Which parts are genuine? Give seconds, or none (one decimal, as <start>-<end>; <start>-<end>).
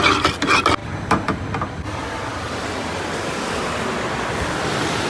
0.0-0.8; 1.4-2.3; 3.8-5.1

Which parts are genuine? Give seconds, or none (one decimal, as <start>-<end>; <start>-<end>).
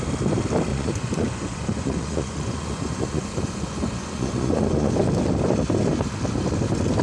0.0-0.7; 4.9-7.0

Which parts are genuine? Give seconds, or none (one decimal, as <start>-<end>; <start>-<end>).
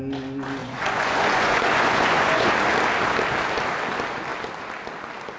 0.0-0.6; 2.5-5.4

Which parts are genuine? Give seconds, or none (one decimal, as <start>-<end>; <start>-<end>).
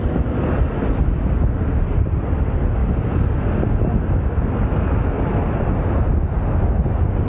0.0-7.3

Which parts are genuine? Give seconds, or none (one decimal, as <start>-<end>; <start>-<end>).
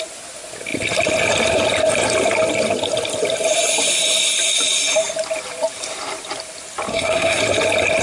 0.0-6.9; 7.4-8.0